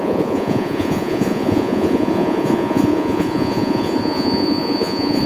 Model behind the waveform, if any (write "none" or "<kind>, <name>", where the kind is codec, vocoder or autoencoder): vocoder, Vocos